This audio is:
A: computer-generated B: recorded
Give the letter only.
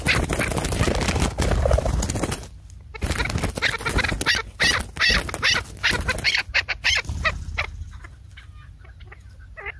B